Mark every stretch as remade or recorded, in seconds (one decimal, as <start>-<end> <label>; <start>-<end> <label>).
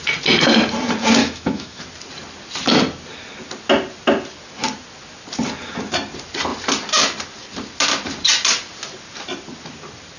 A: 0.0-1.2 recorded; 1.2-1.8 remade; 1.8-10.2 recorded